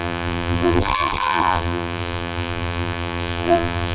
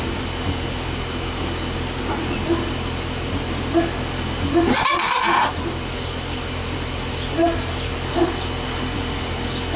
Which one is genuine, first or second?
second